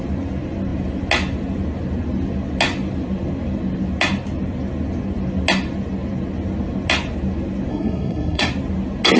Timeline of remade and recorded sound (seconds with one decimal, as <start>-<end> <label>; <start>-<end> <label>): 0.0-7.7 recorded; 7.7-8.5 remade; 8.5-9.2 recorded